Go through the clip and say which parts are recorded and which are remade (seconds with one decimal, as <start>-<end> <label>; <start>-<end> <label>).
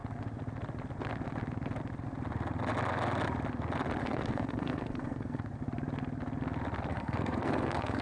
0.0-4.0 recorded; 4.0-5.4 remade; 5.4-6.9 recorded; 6.9-8.0 remade